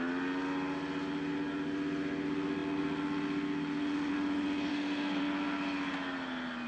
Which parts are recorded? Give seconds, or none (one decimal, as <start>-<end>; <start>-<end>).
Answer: 0.0-4.7; 5.2-6.7

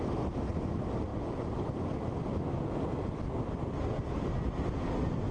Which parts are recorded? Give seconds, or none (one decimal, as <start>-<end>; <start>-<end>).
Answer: 0.0-5.3

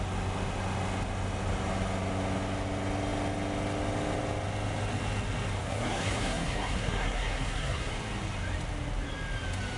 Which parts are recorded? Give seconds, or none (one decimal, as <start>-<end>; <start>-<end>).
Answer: 0.0-5.6; 7.9-9.8

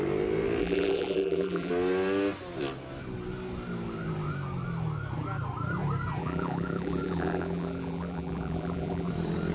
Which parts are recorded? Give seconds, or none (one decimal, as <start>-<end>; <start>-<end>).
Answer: 0.0-0.6; 1.7-6.2; 9.1-9.5